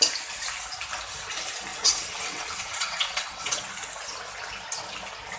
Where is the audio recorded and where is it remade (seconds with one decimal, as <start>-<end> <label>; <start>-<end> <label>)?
0.0-1.7 recorded; 1.7-3.6 remade; 3.6-5.4 recorded